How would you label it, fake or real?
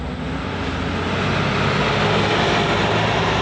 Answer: real